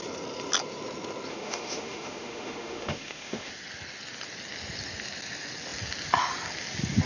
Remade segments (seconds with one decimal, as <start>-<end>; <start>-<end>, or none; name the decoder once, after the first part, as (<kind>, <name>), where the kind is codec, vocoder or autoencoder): 1.3-3.5 (autoencoder, DAC-VAE)